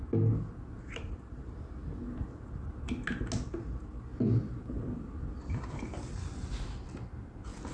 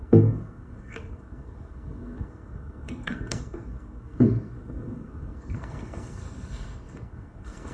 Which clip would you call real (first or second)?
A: first